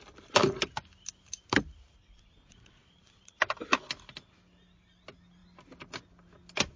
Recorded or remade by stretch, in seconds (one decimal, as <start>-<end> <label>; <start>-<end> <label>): 0.0-2.0 recorded; 2.0-3.5 remade; 3.5-6.8 recorded